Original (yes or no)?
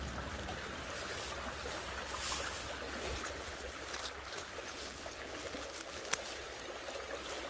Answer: yes